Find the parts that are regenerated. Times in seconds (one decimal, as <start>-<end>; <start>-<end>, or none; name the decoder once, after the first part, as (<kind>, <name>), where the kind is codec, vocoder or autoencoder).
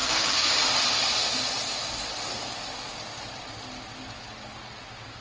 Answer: 0.0-0.6 (codec, DAC)